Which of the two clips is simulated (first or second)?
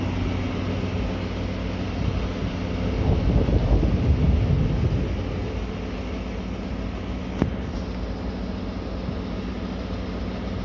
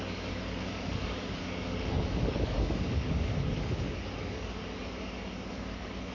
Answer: second